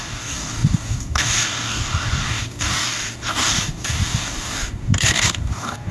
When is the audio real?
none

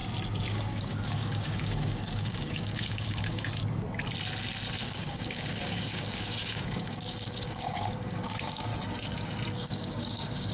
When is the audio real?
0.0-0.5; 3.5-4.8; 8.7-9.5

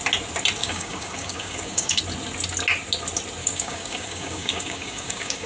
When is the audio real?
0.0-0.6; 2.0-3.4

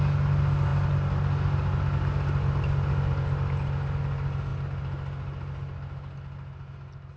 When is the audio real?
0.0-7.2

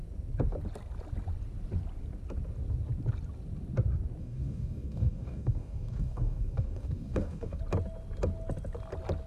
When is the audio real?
0.0-4.2; 7.6-9.3

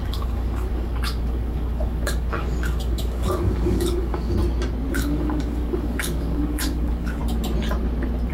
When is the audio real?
4.4-4.9; 7.2-8.3